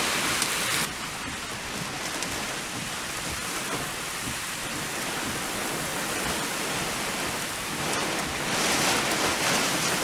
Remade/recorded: recorded